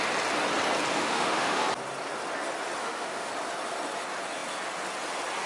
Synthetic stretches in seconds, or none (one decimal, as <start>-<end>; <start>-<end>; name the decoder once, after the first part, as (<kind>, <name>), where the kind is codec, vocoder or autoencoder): 0.9-1.6 (autoencoder, DAC-VAE); 2.8-3.3